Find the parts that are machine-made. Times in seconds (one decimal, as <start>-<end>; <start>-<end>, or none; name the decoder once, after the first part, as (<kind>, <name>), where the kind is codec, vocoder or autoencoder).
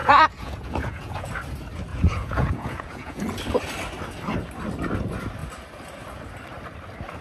0.0-1.3 (vocoder, Vocos); 1.9-3.2